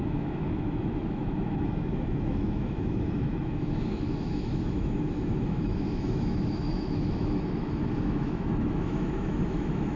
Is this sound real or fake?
fake